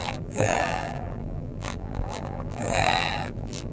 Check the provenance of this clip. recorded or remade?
remade